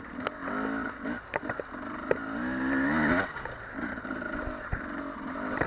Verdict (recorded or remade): recorded